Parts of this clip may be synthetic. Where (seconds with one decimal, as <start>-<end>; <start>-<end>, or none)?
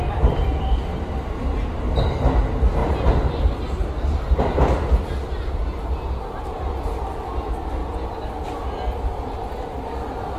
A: 0.9-2.2; 2.8-4.4